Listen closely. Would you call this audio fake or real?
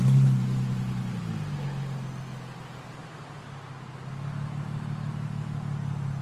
real